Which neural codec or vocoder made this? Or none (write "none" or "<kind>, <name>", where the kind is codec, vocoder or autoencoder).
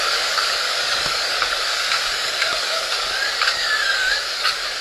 codec, DAC